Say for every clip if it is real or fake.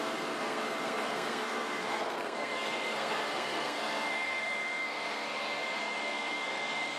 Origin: fake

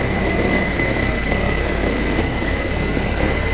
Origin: fake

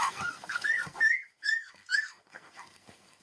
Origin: fake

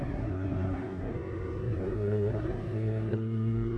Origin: fake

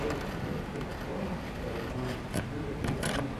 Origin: real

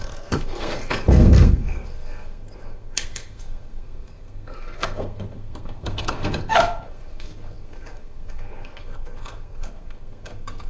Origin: fake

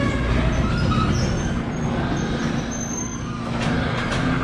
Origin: real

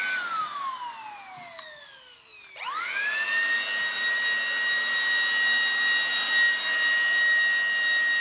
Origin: real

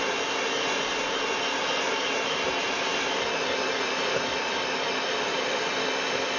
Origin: real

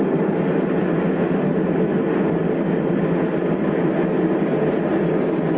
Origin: real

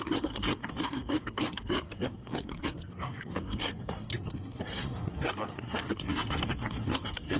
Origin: fake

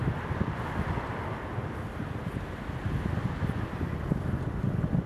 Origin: real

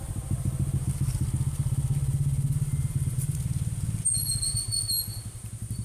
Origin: real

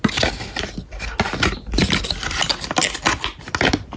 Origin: real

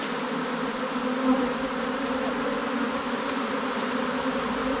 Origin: real